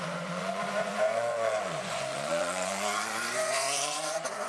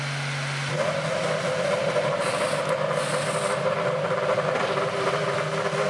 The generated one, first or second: first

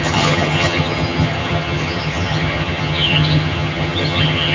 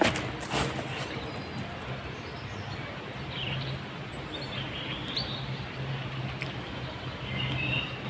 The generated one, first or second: first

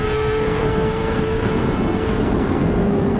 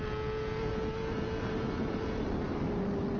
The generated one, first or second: first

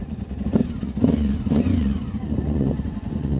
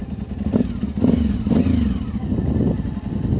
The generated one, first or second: first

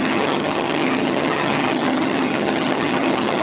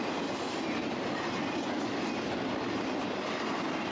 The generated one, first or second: first